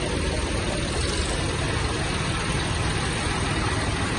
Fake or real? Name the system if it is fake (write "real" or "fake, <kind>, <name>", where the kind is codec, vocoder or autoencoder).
real